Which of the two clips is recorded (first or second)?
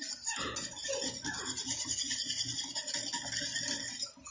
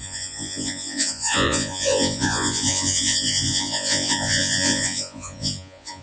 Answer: first